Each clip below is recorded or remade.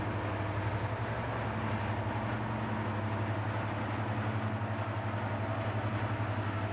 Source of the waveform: recorded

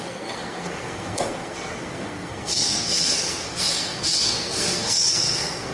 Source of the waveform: remade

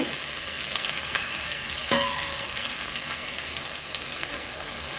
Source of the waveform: remade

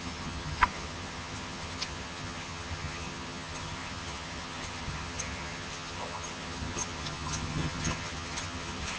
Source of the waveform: remade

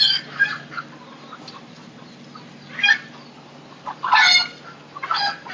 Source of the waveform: recorded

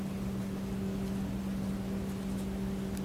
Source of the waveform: recorded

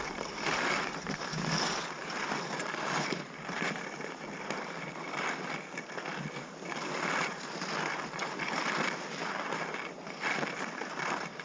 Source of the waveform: recorded